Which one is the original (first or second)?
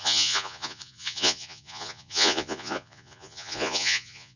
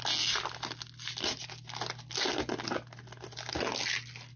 second